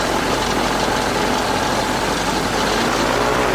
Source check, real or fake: real